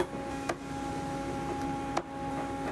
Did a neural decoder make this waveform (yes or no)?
no